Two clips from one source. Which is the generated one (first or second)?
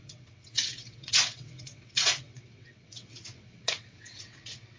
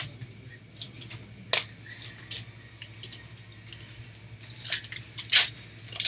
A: first